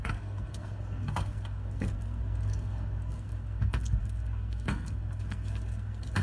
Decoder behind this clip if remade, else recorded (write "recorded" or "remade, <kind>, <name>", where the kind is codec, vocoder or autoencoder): remade, codec, SNAC